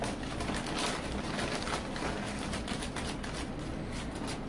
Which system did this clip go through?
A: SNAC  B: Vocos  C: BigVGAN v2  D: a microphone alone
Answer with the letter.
D